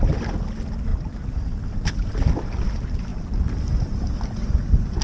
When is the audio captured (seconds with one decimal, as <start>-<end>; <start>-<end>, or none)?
0.0-5.0